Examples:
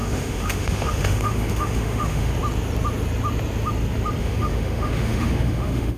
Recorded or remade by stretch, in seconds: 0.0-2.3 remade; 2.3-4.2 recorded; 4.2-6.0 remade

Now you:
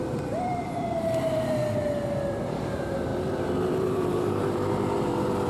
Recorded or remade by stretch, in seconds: 0.0-1.6 remade; 1.6-2.3 recorded; 2.3-3.1 remade; 3.1-3.7 recorded; 3.7-5.5 remade

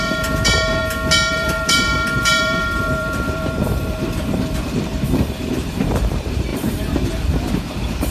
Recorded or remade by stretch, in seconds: 0.0-0.8 remade; 0.8-1.3 recorded; 1.3-8.1 remade

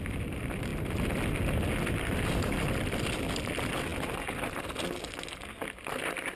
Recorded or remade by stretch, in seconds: 0.0-6.4 recorded

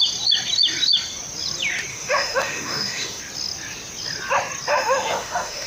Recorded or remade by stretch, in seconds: 0.0-1.9 recorded; 1.9-3.2 remade; 3.2-4.7 recorded; 4.7-5.7 remade

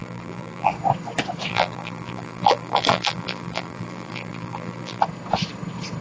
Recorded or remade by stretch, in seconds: 0.0-0.7 remade; 0.7-1.5 recorded; 1.5-5.0 remade; 5.0-6.0 recorded